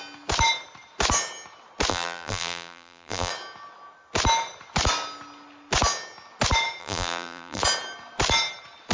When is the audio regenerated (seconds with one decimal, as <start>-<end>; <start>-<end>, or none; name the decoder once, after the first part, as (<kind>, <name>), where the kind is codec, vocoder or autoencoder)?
1.9-3.3 (vocoder, BigVGAN v2); 6.8-7.6